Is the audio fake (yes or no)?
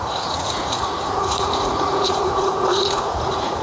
yes